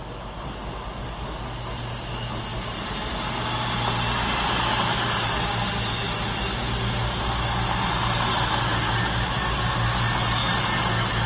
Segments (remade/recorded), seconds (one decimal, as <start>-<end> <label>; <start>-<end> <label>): 0.0-2.5 recorded; 2.5-3.1 remade; 3.1-11.3 recorded